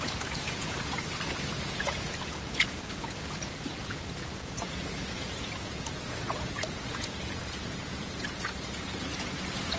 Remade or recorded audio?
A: remade